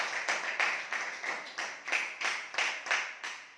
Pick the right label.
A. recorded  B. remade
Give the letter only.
A